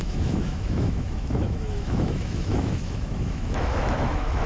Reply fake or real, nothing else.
fake